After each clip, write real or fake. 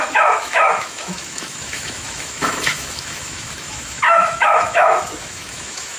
fake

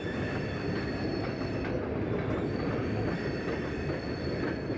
real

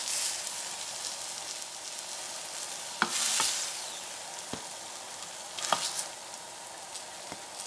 real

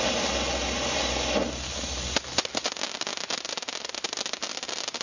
real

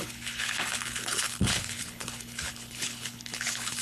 fake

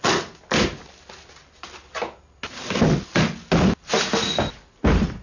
real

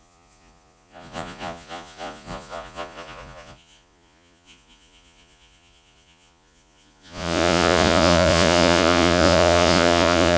fake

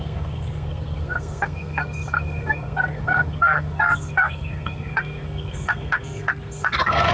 fake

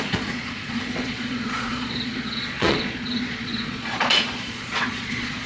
fake